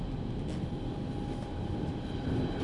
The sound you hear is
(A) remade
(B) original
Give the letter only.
B